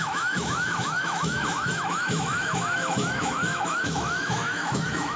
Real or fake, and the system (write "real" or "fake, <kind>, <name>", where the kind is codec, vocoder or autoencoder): fake, autoencoder, DAC-VAE